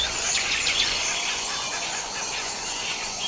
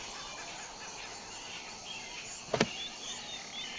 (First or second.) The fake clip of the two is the first